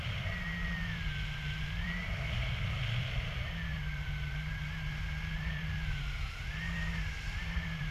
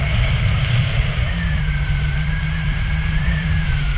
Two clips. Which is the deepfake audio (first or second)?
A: second